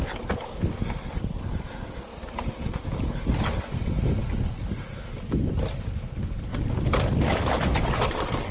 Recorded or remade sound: recorded